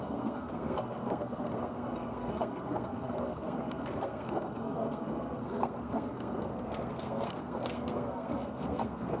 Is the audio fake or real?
fake